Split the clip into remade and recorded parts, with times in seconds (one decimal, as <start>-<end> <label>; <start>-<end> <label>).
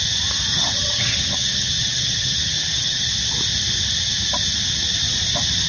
0.0-0.5 recorded; 0.5-3.1 remade; 3.1-5.7 recorded